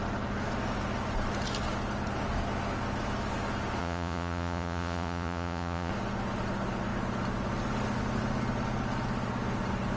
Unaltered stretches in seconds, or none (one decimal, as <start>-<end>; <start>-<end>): 0.0-3.8; 5.9-10.0

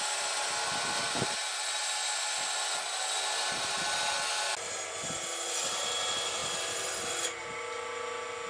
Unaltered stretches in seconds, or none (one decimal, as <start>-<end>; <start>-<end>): 0.0-8.5

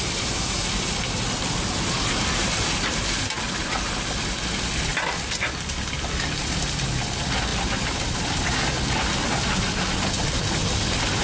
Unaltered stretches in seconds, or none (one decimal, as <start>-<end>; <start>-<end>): 0.0-11.2

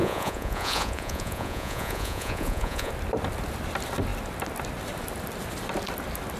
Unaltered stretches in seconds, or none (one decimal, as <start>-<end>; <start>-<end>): 2.9-6.4

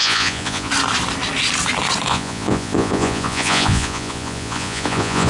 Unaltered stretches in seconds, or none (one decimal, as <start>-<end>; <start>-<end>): 0.7-2.1

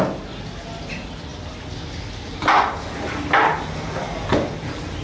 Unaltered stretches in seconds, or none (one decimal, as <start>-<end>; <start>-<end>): 0.0-5.0

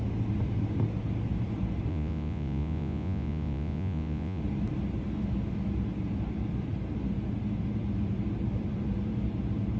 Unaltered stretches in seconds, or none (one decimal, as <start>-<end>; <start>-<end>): 0.0-1.9; 4.4-9.8

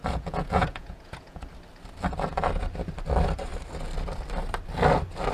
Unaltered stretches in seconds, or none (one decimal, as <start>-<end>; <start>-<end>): 1.4-5.3